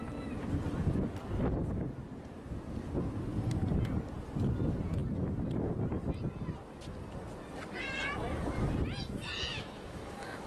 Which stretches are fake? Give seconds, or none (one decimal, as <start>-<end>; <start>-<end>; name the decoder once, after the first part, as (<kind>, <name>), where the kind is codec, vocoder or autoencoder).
9.5-10.5 (autoencoder, DAC-VAE)